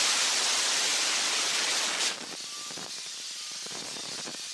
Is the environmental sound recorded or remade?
recorded